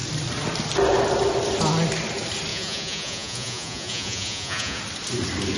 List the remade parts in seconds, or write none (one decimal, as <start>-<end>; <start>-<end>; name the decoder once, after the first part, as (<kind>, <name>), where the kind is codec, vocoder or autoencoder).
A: 2.5-4.8 (vocoder, Vocos)